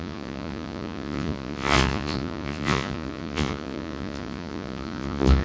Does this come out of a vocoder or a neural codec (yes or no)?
yes